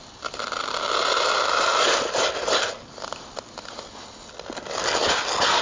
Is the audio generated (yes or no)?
no